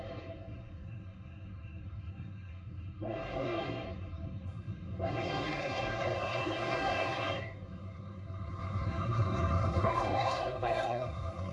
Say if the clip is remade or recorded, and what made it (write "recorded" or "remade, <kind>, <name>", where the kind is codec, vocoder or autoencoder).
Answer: remade, codec, SNAC